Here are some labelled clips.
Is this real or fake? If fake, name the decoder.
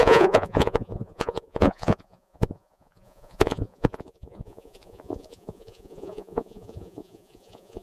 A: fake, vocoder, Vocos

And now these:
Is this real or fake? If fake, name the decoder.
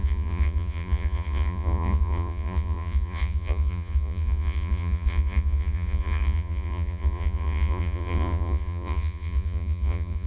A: fake, vocoder, Vocos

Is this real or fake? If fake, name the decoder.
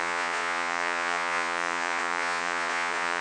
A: fake, vocoder, Vocos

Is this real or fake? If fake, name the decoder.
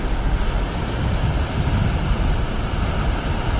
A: real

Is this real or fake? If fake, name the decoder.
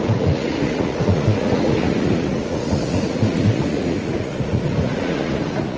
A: fake, vocoder, Vocos